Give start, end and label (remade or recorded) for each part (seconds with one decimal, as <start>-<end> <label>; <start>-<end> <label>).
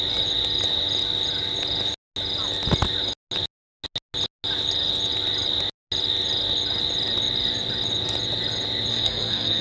0.0-8.9 recorded; 8.9-9.6 remade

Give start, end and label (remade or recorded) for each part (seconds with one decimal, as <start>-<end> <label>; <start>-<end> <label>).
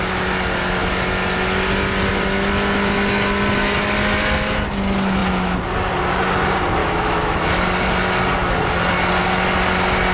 0.0-6.8 recorded; 6.8-7.5 remade; 7.5-10.1 recorded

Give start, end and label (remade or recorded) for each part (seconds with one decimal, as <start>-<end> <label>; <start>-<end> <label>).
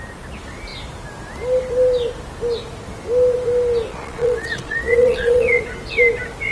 0.0-3.9 recorded; 3.9-5.6 remade; 5.6-6.5 recorded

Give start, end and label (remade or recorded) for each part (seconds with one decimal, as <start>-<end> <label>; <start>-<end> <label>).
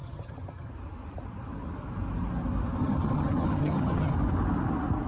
0.0-0.7 remade; 0.7-2.8 recorded; 2.8-4.1 remade; 4.1-5.1 recorded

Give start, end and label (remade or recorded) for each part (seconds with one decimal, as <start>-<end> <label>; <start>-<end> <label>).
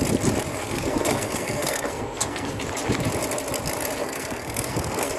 0.0-0.5 recorded; 0.5-2.6 remade; 2.6-4.0 recorded; 4.0-5.2 remade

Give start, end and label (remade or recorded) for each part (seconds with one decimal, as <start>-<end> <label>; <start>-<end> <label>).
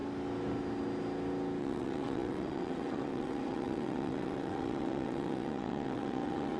0.0-1.6 recorded; 1.6-6.6 remade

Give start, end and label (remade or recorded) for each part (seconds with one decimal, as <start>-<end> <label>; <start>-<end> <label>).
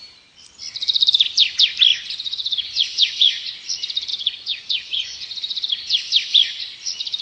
0.0-1.9 recorded; 1.9-3.5 remade; 3.5-4.1 recorded; 4.1-5.7 remade; 5.7-7.2 recorded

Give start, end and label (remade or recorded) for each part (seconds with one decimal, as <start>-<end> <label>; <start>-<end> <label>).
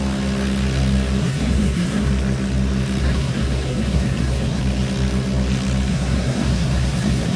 0.0-1.2 recorded; 1.2-2.1 remade; 2.1-3.0 recorded; 3.0-4.6 remade; 4.6-5.9 recorded; 5.9-7.4 remade